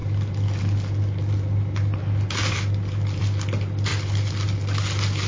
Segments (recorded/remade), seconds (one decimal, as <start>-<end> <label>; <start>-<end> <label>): 0.0-5.3 recorded